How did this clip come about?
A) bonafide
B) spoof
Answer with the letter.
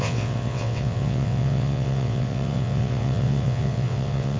B